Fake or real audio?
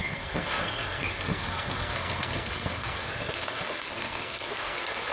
fake